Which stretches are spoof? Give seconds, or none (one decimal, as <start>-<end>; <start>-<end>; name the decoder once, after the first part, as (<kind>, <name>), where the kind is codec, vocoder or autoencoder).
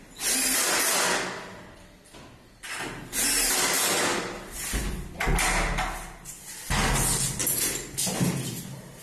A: none